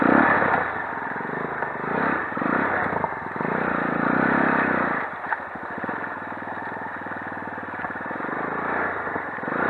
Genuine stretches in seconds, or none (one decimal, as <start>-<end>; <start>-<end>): 0.0-9.7

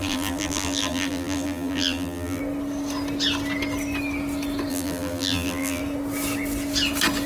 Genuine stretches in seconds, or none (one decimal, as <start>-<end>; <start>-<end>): 2.4-4.7; 5.8-7.3

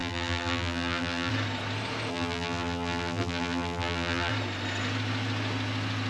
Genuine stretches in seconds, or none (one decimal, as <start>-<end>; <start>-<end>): 1.3-2.1; 4.3-6.1

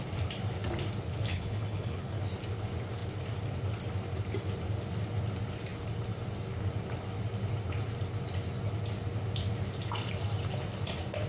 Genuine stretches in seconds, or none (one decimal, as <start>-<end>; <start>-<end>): 0.0-1.3; 2.2-11.3

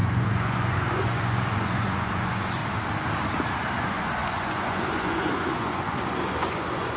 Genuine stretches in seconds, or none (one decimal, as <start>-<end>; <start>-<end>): 2.6-3.8

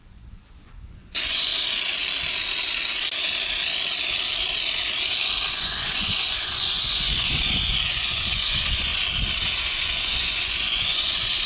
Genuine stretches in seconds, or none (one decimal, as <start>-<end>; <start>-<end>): 1.5-5.5; 8.9-9.6